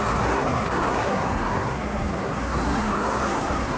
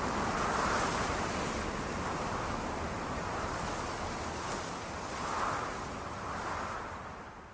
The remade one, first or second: first